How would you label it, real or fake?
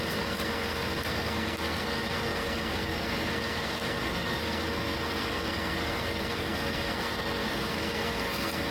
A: fake